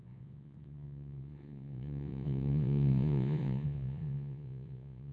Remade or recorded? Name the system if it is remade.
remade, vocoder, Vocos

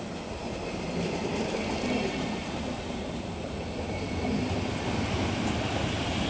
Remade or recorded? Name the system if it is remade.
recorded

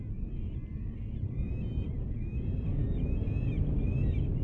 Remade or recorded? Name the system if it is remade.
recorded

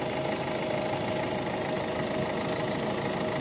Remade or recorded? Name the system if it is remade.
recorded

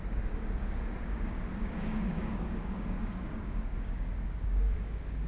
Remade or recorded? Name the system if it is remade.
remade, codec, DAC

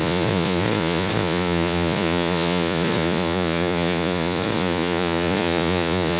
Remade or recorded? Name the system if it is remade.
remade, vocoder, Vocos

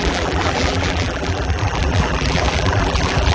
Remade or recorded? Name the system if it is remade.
remade, vocoder, BigVGAN v2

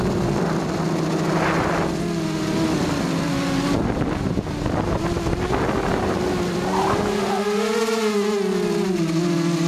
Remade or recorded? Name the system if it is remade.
recorded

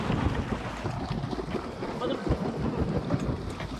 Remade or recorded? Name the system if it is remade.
recorded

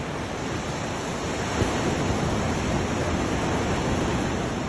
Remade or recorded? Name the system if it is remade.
recorded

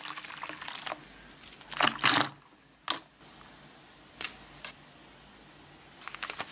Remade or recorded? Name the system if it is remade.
recorded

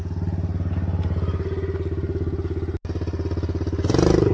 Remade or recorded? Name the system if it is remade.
recorded